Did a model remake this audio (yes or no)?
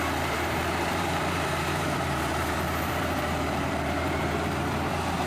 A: yes